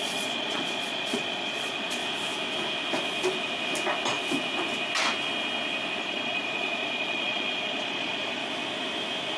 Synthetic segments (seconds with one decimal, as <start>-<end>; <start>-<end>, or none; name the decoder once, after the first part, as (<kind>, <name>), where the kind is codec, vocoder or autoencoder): 0.0-2.0 (vocoder, Vocos); 6.0-8.4